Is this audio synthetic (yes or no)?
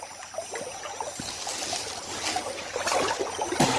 no